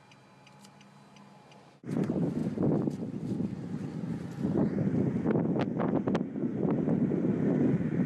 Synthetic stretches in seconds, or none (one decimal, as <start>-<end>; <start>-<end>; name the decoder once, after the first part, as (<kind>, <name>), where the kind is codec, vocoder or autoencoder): none